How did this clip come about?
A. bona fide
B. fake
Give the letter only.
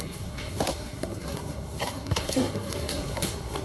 B